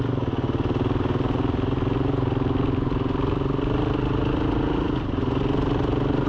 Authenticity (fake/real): real